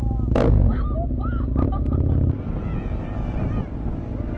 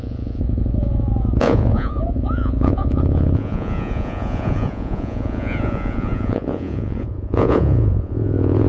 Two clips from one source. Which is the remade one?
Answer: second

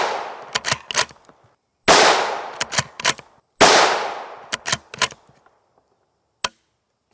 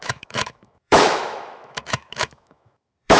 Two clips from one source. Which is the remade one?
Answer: second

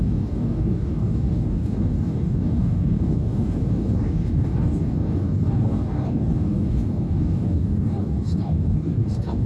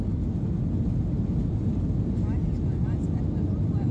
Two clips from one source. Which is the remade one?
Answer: first